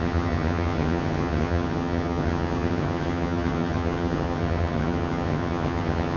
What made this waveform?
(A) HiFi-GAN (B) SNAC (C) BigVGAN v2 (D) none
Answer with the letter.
A